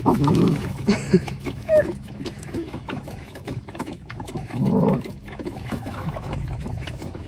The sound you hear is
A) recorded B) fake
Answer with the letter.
B